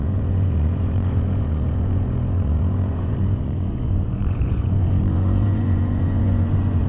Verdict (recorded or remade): remade